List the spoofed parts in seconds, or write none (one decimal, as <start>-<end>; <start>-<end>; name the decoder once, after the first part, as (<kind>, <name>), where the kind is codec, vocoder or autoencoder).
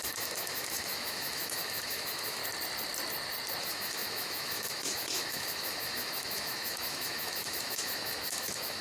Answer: 0.0-2.4 (autoencoder, DAC-VAE); 3.6-8.8